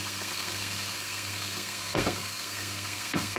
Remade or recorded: remade